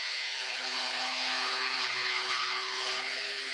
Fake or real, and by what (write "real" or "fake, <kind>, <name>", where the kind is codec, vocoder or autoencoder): fake, codec, HILCodec